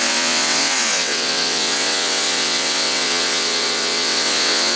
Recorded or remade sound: remade